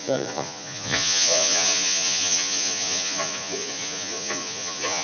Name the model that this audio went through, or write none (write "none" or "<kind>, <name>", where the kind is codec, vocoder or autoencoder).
vocoder, Vocos